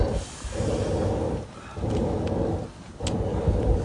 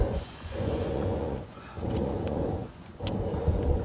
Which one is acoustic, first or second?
first